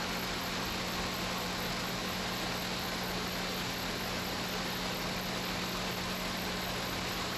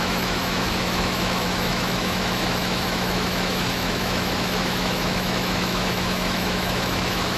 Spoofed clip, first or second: second